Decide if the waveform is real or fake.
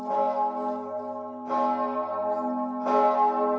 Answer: real